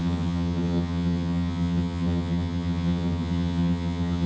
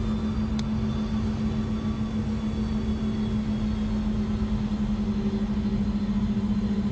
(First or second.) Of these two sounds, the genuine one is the second